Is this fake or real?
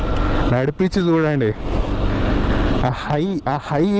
real